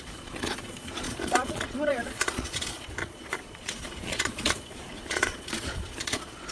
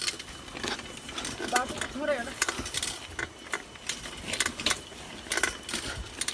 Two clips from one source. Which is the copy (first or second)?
first